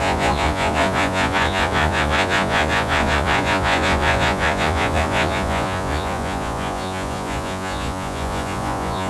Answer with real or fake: fake